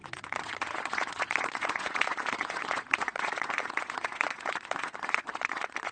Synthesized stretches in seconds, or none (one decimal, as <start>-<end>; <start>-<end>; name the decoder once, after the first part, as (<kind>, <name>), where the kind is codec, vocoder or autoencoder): 0.0-5.9 (vocoder, Vocos)